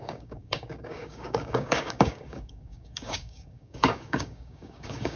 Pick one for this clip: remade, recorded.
remade